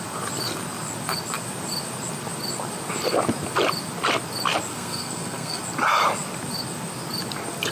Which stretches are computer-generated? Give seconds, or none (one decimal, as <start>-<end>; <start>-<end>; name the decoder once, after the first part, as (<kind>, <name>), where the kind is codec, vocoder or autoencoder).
4.7-5.6 (codec, SNAC)